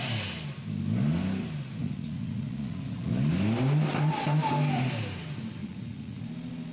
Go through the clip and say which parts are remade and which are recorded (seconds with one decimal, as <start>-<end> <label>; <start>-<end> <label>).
0.0-1.8 recorded; 1.8-3.1 remade; 3.1-5.6 recorded; 5.6-6.2 remade; 6.2-6.7 recorded